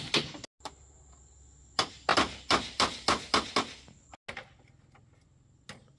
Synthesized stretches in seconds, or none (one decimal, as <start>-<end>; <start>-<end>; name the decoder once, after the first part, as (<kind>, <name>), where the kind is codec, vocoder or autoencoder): none